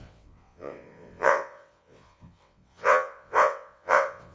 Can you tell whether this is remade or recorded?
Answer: remade